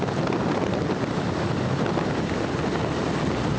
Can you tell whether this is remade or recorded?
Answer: remade